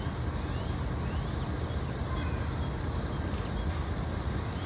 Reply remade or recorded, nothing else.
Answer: recorded